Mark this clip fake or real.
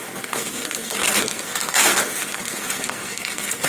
fake